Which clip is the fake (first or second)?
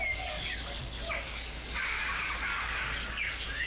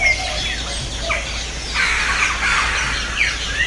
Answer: first